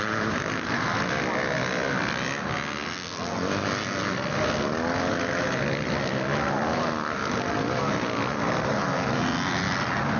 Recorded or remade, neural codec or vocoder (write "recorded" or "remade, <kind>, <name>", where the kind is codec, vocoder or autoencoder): recorded